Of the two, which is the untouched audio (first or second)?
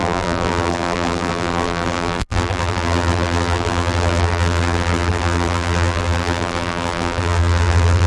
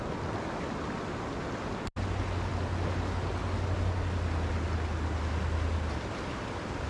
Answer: second